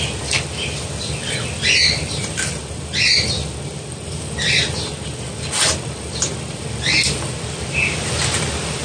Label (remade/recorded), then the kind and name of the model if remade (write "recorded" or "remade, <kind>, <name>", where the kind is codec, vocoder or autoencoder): recorded